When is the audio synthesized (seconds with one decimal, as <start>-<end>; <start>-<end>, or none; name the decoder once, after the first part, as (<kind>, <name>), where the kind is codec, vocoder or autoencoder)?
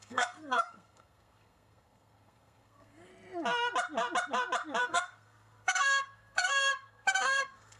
0.0-3.1 (codec, SNAC); 4.8-7.8